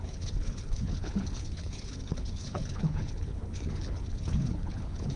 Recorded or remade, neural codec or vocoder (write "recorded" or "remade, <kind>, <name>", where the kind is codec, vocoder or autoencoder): remade, codec, HILCodec